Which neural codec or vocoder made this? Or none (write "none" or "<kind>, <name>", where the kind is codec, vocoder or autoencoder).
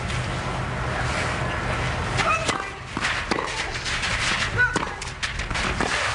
none